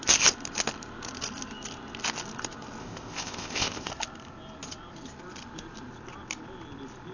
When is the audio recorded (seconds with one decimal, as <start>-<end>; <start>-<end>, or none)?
0.0-2.8; 3.9-7.1